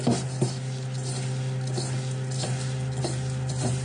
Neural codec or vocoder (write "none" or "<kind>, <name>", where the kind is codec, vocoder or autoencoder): none